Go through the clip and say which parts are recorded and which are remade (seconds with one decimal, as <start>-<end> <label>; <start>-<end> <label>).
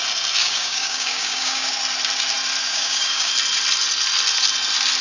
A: 0.0-0.4 recorded; 0.4-1.7 remade; 1.7-2.6 recorded; 2.6-3.3 remade; 3.3-5.0 recorded